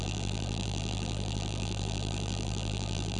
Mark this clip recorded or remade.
remade